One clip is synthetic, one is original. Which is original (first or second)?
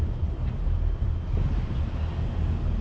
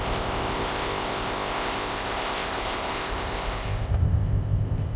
first